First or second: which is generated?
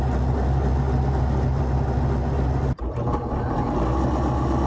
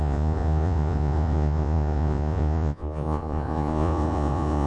second